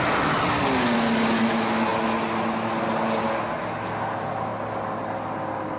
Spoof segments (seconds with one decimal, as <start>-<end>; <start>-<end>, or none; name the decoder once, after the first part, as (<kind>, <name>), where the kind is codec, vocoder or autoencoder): none